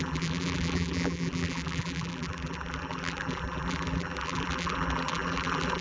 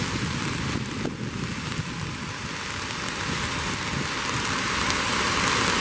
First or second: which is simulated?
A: first